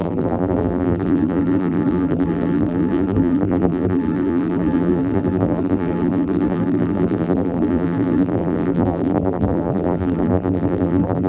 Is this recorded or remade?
remade